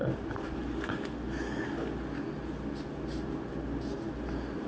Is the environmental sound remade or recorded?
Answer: recorded